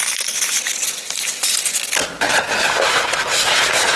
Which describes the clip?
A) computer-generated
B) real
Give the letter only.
B